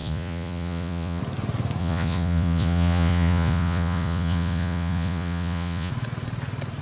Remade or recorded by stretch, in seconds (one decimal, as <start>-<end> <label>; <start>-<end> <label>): 0.0-1.2 remade; 1.2-1.8 recorded; 1.8-5.9 remade; 5.9-6.8 recorded